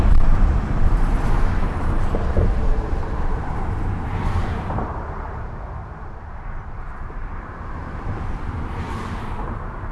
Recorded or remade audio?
remade